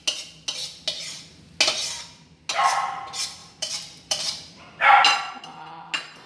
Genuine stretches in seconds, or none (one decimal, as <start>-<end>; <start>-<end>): 0.0-3.4; 5.4-6.3